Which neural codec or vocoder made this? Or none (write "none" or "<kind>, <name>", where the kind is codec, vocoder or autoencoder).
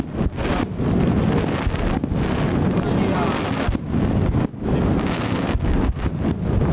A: none